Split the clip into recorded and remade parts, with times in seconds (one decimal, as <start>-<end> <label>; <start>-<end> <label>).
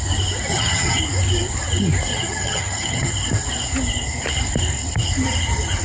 0.0-0.5 recorded; 0.5-1.0 remade; 1.0-2.1 recorded; 2.1-3.1 remade; 3.1-5.8 recorded